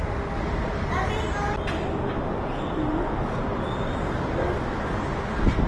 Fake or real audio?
real